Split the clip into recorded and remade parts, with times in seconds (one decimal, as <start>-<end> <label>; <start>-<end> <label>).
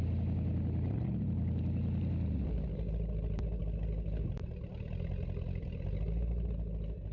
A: 0.0-7.1 recorded